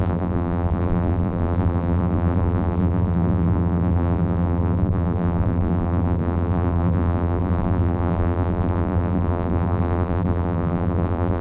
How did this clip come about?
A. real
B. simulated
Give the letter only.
B